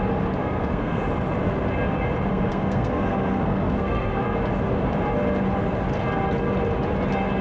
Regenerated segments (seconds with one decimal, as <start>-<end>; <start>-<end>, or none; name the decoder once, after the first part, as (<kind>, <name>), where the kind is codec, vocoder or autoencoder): 0.4-1.0 (codec, SNAC); 2.3-4.2